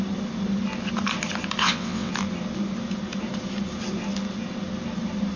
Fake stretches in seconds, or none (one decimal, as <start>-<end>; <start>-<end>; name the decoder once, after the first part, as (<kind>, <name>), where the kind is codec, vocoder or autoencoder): 1.6-2.1 (vocoder, WaveNeXt)